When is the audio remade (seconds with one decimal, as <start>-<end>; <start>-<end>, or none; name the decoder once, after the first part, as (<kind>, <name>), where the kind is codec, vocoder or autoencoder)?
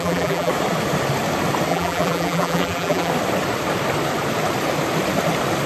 0.0-0.5 (vocoder, BigVGAN v2); 1.7-3.1